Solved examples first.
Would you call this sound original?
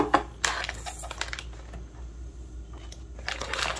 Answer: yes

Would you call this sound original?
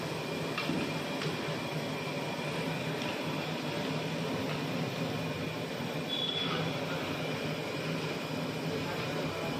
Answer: yes